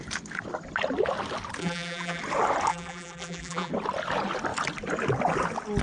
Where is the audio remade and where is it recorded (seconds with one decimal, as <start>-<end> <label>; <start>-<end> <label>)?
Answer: 0.0-1.6 recorded; 1.6-2.2 remade; 2.2-2.7 recorded; 2.7-3.7 remade; 3.7-5.8 recorded